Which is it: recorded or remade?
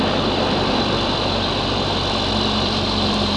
remade